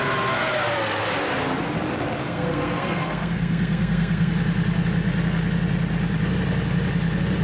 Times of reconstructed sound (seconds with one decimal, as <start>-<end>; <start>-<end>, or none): 2.2-4.3